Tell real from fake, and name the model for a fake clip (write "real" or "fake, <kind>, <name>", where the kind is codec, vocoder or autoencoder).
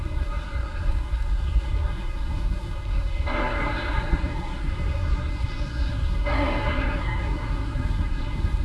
fake, codec, SNAC